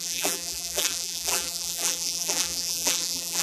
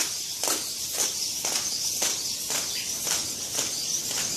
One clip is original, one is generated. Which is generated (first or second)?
first